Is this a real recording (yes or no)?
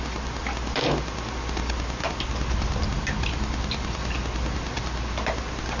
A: yes